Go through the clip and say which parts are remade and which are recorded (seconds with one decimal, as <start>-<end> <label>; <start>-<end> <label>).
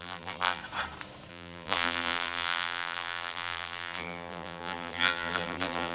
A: 0.0-0.6 remade; 0.6-1.3 recorded; 1.3-5.9 remade